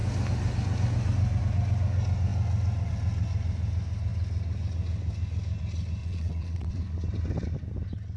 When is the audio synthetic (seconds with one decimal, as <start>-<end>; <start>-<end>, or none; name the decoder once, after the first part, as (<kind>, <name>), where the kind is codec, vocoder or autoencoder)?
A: 6.0-6.8 (vocoder, WaveNeXt)